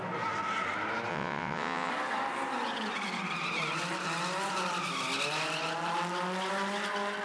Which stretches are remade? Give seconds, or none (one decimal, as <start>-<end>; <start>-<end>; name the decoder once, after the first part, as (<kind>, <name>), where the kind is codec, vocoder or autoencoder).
1.1-1.9 (vocoder, WaveNeXt)